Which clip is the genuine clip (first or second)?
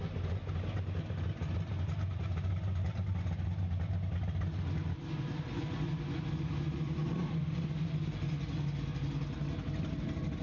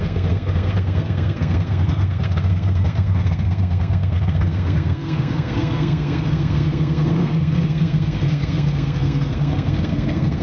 first